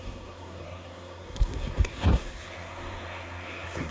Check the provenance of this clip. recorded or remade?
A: remade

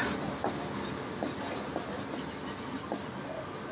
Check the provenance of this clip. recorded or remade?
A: recorded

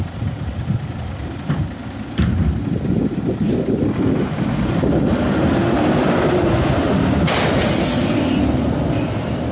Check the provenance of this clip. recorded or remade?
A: recorded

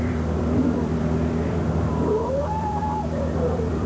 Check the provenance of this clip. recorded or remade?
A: remade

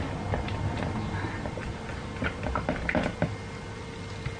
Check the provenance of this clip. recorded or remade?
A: recorded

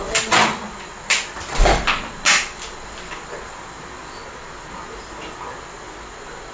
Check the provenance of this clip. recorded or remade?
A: recorded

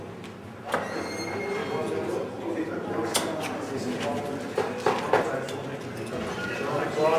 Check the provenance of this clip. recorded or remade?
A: recorded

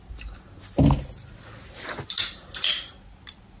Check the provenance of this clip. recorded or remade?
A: recorded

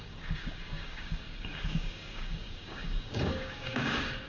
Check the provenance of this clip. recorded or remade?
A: remade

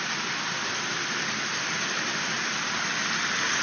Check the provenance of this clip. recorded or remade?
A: remade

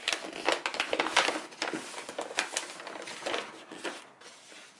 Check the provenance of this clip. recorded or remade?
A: recorded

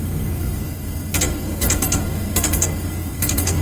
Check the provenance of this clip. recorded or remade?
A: remade